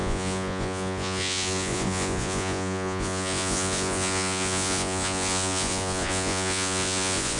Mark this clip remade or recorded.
remade